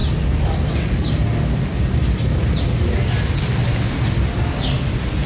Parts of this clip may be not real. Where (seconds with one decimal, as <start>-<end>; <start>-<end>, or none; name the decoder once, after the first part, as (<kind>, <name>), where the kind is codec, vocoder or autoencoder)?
none